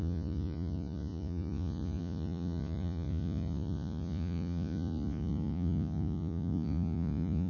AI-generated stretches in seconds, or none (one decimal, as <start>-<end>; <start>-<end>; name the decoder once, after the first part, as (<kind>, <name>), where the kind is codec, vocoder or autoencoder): 0.0-7.5 (vocoder, Vocos)

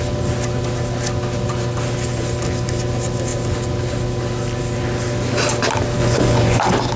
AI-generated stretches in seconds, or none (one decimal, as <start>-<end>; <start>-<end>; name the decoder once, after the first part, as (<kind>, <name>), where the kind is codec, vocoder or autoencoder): 6.0-6.6 (vocoder, Vocos)

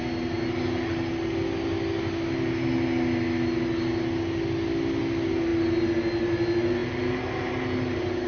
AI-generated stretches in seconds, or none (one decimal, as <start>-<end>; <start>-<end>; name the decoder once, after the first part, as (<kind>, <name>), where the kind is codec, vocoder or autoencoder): none

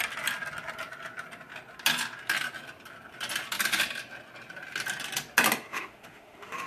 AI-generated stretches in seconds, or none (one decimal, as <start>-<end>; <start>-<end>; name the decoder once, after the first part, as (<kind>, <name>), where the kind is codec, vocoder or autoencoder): 5.7-6.7 (autoencoder, DAC-VAE)

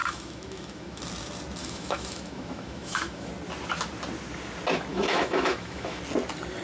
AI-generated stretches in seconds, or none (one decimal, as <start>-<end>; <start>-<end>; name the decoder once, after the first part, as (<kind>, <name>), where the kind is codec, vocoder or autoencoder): 0.0-1.0 (autoencoder, DAC-VAE); 1.6-3.3; 4.9-6.0

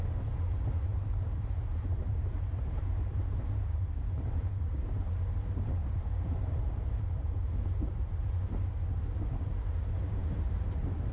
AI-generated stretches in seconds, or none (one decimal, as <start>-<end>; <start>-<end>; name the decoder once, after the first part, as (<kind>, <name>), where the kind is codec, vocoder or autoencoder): 0.9-5.0 (vocoder, BigVGAN v2); 5.8-8.7; 10.2-11.1

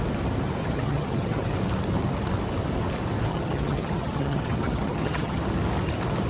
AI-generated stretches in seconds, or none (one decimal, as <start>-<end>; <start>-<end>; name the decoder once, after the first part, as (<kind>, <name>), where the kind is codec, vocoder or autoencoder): 0.6-1.5 (vocoder, HiFi-GAN); 3.3-5.4

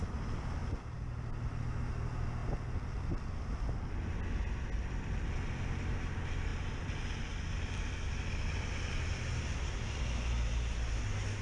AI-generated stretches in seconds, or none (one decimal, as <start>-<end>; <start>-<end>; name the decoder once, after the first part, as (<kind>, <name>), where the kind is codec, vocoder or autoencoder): none